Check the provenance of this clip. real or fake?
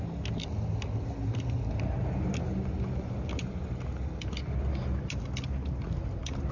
real